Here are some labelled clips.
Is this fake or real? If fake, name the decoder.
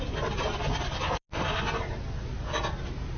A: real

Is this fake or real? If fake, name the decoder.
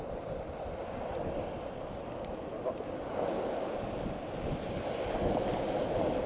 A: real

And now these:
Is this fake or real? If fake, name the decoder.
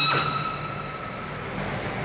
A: real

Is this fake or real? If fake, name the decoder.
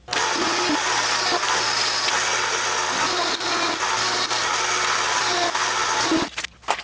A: real